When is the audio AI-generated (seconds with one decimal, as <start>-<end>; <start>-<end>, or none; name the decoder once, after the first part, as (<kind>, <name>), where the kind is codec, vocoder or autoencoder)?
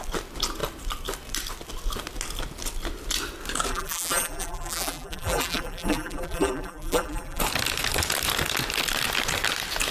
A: 3.7-7.4 (vocoder, BigVGAN v2)